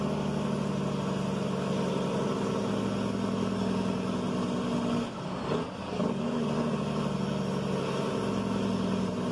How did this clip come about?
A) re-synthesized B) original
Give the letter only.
B